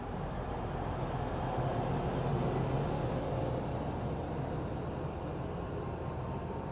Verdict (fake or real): real